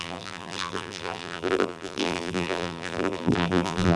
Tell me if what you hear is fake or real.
fake